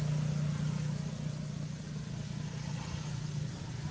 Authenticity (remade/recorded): recorded